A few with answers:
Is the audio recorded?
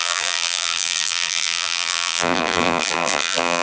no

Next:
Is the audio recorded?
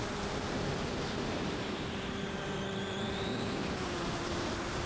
no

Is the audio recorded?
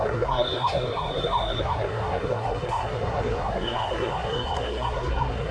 no